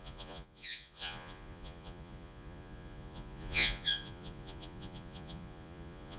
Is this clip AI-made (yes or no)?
yes